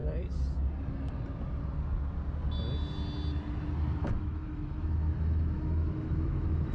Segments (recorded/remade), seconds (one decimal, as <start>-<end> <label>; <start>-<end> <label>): 0.0-4.0 recorded; 4.0-6.7 remade